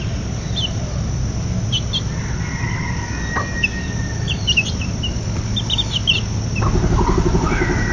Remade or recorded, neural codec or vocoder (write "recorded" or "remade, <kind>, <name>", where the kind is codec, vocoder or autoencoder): recorded